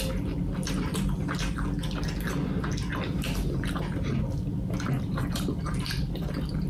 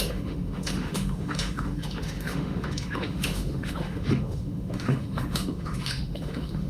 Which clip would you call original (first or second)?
first